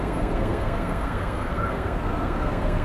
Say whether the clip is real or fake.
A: fake